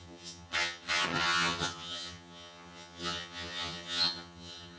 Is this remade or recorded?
remade